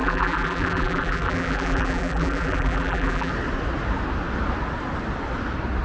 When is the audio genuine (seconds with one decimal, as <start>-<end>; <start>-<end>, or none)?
3.3-5.8